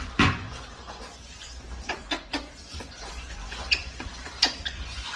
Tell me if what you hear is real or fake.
fake